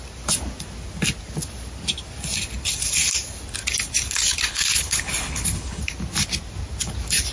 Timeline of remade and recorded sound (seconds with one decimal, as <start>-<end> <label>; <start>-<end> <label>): 0.0-4.5 recorded; 4.5-5.8 remade; 5.8-7.3 recorded